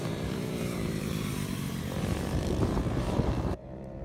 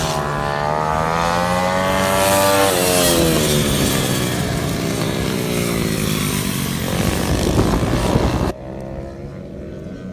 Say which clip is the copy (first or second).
first